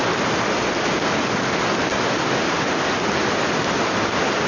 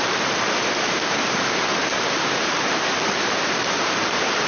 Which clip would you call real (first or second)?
first